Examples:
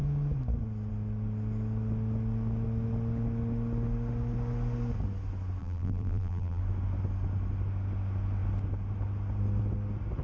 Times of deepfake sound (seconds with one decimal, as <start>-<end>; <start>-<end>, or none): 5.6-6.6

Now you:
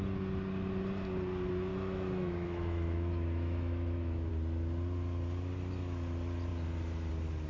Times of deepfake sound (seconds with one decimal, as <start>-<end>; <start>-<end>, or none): 1.7-4.3

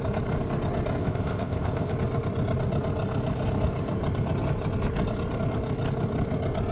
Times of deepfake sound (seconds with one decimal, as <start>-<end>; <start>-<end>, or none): 1.0-1.9